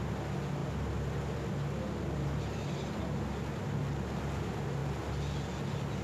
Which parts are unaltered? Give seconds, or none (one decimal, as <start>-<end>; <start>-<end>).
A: 0.0-6.0